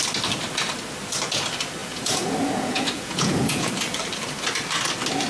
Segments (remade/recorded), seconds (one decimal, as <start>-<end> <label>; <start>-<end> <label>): 0.0-1.8 recorded; 1.8-3.7 remade; 3.7-5.3 recorded